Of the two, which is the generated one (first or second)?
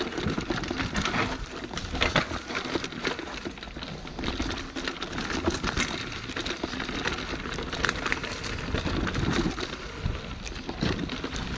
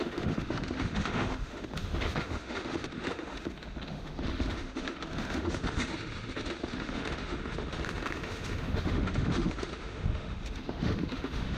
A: second